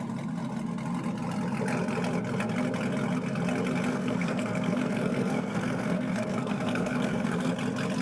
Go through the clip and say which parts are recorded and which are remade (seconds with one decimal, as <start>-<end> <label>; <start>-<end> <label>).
0.0-3.9 recorded; 3.9-7.5 remade; 7.5-8.0 recorded

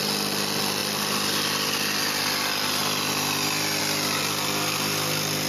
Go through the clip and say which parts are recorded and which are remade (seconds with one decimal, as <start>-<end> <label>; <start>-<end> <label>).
0.0-5.5 recorded

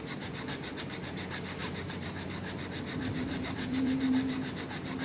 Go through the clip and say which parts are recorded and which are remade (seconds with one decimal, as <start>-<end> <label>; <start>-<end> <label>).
0.0-1.6 recorded; 1.6-4.6 remade; 4.6-5.0 recorded